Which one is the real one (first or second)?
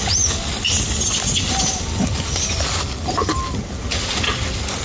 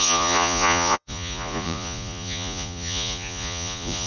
first